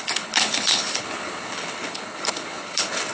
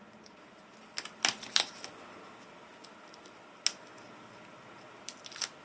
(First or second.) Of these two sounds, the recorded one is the second